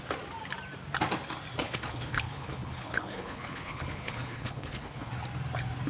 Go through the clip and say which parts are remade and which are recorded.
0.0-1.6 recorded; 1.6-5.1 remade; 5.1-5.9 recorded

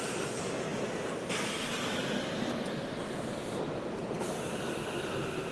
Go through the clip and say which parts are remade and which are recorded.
0.0-5.5 recorded

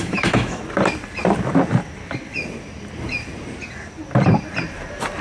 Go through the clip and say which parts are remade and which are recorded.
0.0-0.6 remade; 0.6-5.2 recorded

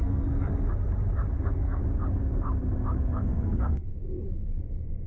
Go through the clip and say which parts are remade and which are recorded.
0.0-0.5 remade; 0.5-1.3 recorded; 1.3-1.8 remade; 1.8-3.0 recorded; 3.0-3.9 remade; 3.9-5.1 recorded

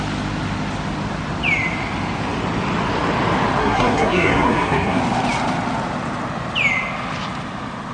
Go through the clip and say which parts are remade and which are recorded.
0.0-3.6 recorded; 3.6-5.0 remade; 5.0-7.9 recorded